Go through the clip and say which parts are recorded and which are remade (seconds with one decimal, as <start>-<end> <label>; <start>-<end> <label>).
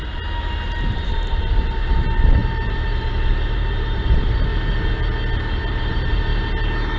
0.0-0.9 recorded; 0.9-4.5 remade; 4.5-5.7 recorded; 5.7-6.3 remade; 6.3-7.0 recorded